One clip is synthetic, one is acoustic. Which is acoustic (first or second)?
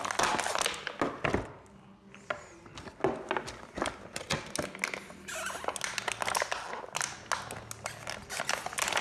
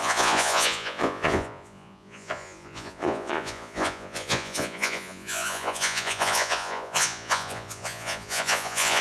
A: first